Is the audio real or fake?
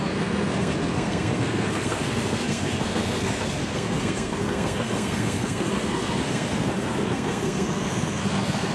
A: fake